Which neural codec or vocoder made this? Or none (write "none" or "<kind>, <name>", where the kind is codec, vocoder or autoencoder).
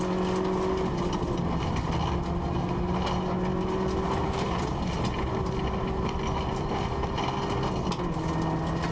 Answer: none